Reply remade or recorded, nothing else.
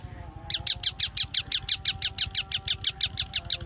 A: recorded